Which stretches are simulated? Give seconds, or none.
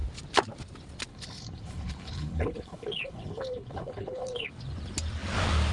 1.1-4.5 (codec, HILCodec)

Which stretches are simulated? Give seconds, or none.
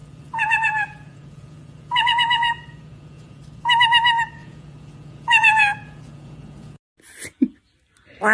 0.0-3.4 (vocoder, Vocos); 4.4-6.8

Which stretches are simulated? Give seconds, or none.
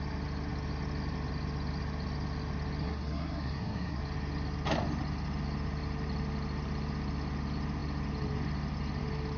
2.8-4.0 (codec, SNAC)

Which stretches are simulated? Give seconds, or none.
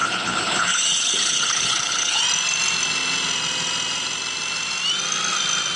0.0-2.2 (codec, HILCodec)